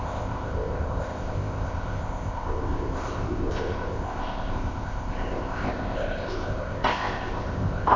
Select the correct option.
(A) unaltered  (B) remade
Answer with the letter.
B